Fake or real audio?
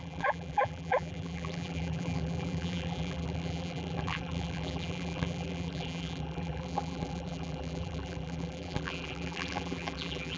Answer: fake